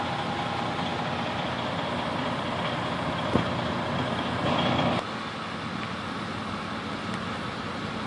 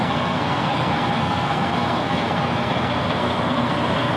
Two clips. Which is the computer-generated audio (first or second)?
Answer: second